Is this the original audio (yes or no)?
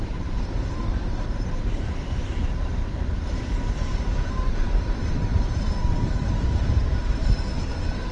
no